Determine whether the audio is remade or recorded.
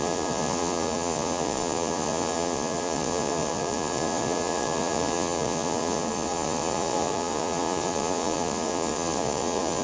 remade